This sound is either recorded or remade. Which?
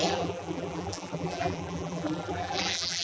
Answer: remade